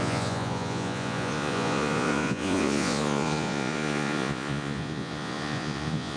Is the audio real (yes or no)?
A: no